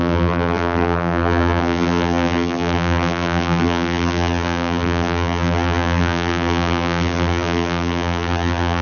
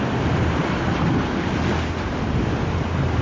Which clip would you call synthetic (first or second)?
first